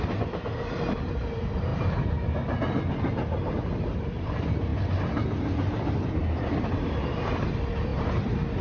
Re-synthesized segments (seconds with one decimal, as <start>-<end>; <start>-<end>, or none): none